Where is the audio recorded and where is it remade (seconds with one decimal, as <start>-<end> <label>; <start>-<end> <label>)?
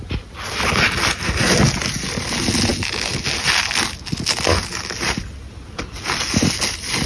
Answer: 0.0-7.1 recorded